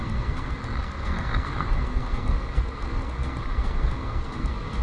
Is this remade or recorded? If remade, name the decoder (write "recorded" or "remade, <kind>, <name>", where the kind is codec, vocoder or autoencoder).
remade, codec, SNAC